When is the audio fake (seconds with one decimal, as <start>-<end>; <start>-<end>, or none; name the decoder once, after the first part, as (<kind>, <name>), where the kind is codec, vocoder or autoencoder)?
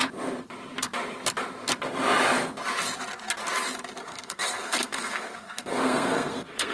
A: 4.0-6.7 (codec, SNAC)